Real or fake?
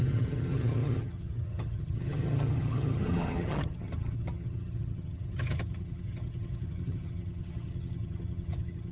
fake